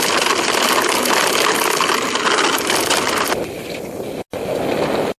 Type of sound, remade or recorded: recorded